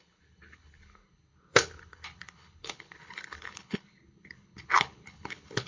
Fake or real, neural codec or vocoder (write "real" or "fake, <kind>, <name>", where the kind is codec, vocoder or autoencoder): fake, codec, HILCodec